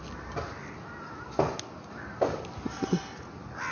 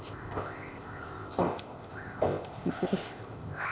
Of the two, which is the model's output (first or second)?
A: second